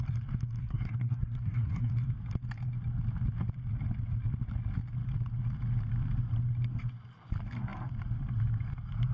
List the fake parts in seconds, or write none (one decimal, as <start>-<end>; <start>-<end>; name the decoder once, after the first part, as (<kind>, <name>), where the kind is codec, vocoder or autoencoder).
0.6-1.9 (codec, SNAC)